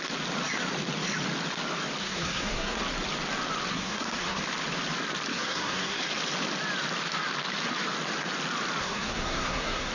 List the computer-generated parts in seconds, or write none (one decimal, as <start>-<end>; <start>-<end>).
2.0-2.8; 3.7-4.4; 5.3-6.0; 8.8-9.9